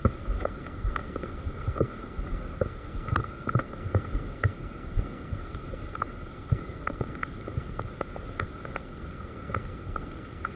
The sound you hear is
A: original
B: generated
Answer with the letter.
B